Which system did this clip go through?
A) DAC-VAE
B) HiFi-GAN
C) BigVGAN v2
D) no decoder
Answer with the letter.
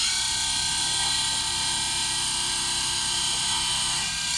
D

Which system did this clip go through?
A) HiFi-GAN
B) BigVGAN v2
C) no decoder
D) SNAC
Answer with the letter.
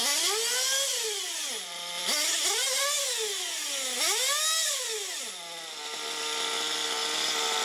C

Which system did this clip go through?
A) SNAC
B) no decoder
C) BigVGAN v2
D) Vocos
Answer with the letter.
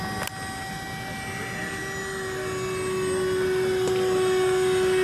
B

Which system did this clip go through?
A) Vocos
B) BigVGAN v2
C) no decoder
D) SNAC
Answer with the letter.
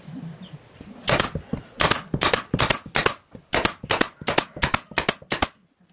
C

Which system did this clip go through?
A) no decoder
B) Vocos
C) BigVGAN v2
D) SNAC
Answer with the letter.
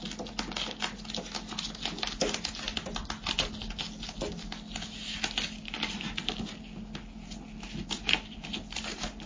A